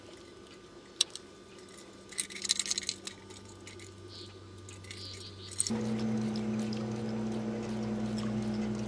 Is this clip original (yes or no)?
yes